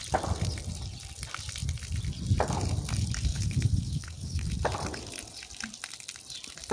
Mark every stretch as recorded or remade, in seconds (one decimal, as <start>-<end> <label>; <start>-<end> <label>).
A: 0.0-3.3 recorded; 3.3-4.5 remade; 4.5-6.7 recorded